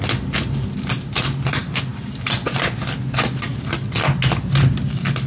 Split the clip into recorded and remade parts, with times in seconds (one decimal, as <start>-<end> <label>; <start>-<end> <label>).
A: 0.0-5.3 recorded